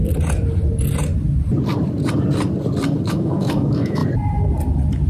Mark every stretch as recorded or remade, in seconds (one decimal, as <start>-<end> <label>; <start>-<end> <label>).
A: 0.0-3.1 recorded; 3.1-4.0 remade; 4.0-5.1 recorded